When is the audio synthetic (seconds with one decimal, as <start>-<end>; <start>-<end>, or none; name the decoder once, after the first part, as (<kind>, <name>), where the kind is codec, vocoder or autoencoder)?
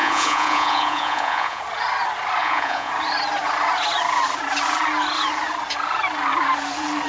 0.0-1.6 (vocoder, Vocos); 2.4-2.9